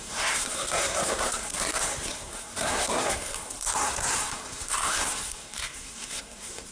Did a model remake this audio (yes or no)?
yes